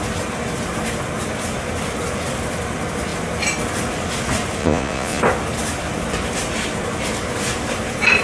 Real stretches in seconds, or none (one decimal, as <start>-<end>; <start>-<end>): 0.0-4.6; 5.2-8.2